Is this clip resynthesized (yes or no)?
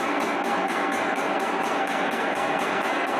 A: yes